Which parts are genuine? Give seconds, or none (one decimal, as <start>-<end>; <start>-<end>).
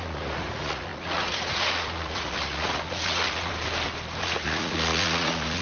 3.5-4.2